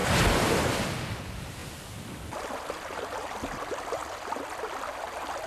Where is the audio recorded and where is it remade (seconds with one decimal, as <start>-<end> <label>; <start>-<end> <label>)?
0.0-0.6 recorded; 0.6-1.6 remade; 1.6-2.3 recorded; 2.3-4.0 remade; 4.0-5.5 recorded